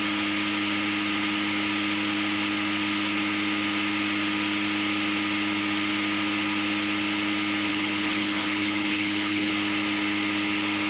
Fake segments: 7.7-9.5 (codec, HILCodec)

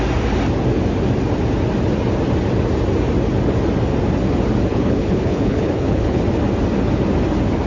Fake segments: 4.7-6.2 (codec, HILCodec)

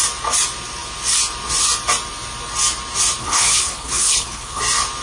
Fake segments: 3.2-4.6 (codec, HILCodec)

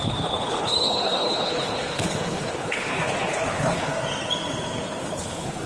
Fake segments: 0.0-3.9 (codec, HILCodec); 5.0-5.7